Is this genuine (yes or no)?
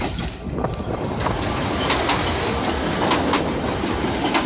no